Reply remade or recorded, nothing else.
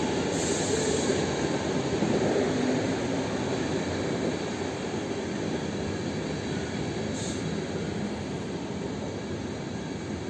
recorded